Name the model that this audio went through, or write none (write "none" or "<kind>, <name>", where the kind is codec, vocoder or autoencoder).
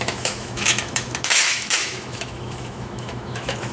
autoencoder, DAC-VAE